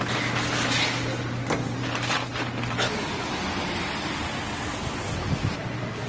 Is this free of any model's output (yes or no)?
yes